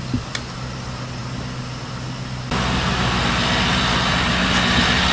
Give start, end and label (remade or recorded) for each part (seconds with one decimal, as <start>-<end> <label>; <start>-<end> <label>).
0.0-5.1 recorded